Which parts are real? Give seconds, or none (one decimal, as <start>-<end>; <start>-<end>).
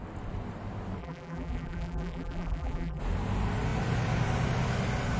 0.0-1.0; 3.0-5.2